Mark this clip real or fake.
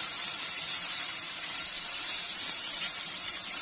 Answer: fake